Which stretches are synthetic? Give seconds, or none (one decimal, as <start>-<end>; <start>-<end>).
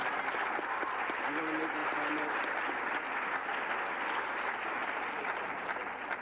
none